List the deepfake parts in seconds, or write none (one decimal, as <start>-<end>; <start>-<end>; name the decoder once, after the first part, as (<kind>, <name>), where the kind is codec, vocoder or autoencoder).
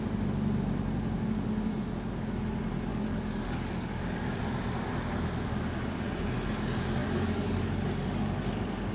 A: 2.9-4.4 (codec, DAC); 7.0-8.5